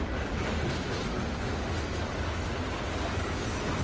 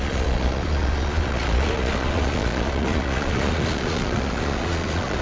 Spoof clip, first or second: second